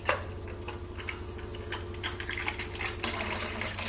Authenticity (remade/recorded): recorded